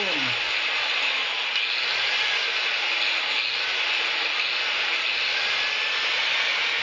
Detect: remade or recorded recorded